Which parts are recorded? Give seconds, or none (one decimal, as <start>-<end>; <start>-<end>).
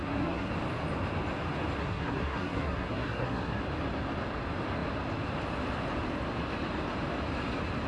0.5-1.8; 3.6-7.9